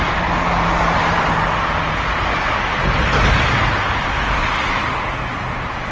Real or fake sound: real